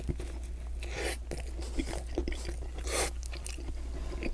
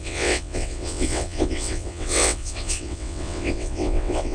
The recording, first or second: first